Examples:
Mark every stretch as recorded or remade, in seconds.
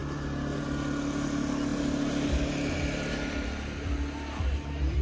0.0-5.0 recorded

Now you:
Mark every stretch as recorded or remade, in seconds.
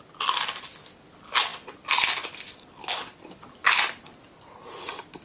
0.0-5.2 recorded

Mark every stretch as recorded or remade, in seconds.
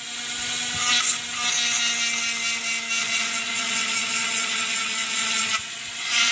0.0-3.0 recorded; 3.0-6.3 remade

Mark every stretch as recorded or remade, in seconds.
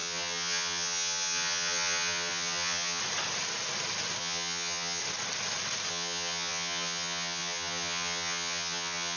0.0-3.0 remade; 3.0-4.2 recorded; 4.2-5.0 remade; 5.0-5.9 recorded; 5.9-9.2 remade